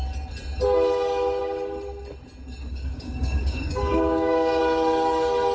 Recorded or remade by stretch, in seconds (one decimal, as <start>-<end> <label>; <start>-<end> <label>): 0.0-2.7 recorded; 2.7-4.6 remade; 4.6-5.5 recorded